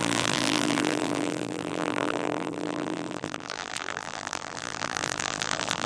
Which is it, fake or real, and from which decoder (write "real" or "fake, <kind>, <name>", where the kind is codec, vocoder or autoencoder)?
fake, vocoder, BigVGAN v2